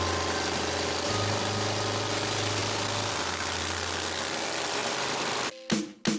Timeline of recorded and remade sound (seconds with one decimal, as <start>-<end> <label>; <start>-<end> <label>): 0.0-4.8 recorded; 4.8-5.5 remade; 5.5-6.2 recorded